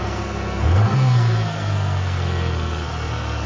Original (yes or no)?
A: no